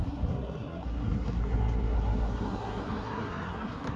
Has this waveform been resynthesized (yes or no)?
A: yes